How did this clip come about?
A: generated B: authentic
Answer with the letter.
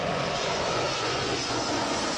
A